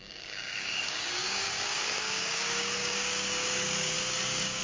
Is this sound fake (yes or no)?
yes